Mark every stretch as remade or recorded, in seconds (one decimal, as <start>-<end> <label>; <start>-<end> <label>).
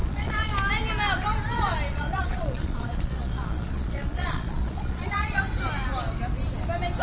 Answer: 0.0-0.5 remade; 0.5-1.9 recorded; 1.9-5.4 remade; 5.4-7.0 recorded